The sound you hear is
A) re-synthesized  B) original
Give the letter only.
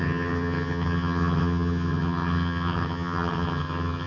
A